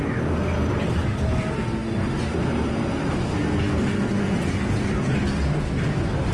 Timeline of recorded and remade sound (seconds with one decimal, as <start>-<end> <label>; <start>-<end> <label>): 0.0-6.3 recorded